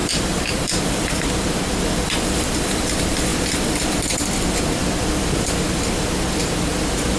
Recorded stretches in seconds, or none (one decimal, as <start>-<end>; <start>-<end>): none